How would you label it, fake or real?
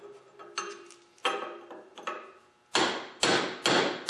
real